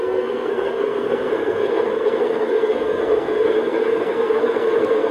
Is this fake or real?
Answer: fake